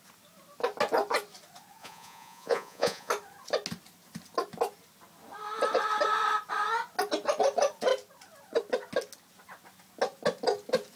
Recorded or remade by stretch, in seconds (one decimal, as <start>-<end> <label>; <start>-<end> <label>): 0.0-1.8 recorded; 1.8-3.1 remade; 3.1-11.0 recorded

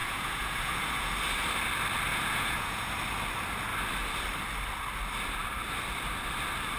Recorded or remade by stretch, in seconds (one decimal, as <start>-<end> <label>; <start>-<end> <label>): 0.0-1.1 remade; 1.1-2.1 recorded; 2.1-2.9 remade; 2.9-6.8 recorded

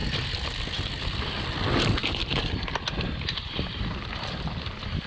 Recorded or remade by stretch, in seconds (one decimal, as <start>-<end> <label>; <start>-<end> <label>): 0.0-5.1 recorded

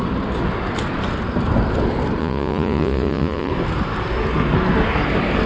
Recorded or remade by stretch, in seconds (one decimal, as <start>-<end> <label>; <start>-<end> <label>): 0.0-2.2 recorded; 2.2-3.5 remade; 3.5-5.5 recorded

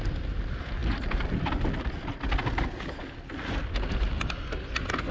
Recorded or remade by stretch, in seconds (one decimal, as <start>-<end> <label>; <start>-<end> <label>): 0.0-5.1 recorded

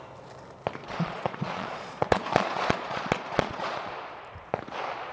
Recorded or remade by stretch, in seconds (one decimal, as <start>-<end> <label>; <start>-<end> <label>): 0.0-0.8 recorded; 0.8-3.9 remade; 3.9-5.1 recorded

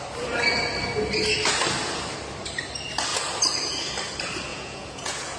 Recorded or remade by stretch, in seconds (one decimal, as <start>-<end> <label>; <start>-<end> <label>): 0.0-4.5 recorded; 4.5-5.4 remade

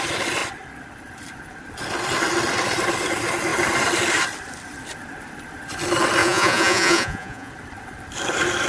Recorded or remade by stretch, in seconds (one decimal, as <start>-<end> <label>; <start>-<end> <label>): 0.0-6.2 recorded; 6.2-7.5 remade; 7.5-8.7 recorded